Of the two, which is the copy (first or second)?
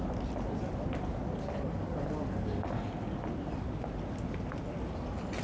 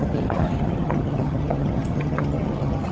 second